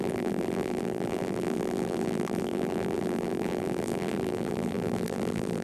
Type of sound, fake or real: fake